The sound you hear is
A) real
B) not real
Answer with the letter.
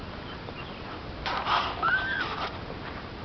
A